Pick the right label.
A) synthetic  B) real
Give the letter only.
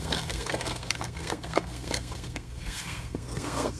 A